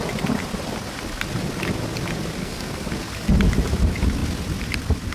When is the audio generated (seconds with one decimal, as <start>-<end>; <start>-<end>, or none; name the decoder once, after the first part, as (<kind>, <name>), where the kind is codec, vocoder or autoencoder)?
2.4-2.9 (codec, SNAC)